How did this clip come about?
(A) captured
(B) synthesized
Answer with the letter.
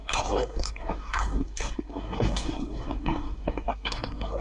B